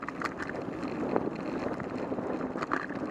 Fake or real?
real